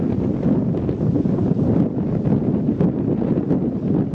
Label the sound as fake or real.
real